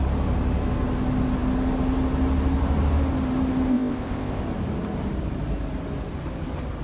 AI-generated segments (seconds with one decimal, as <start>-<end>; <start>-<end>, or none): 3.7-4.4